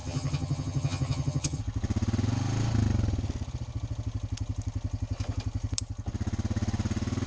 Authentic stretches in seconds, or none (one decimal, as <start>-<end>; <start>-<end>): 1.6-7.3